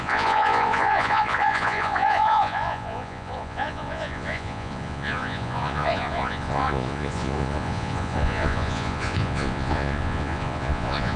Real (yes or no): no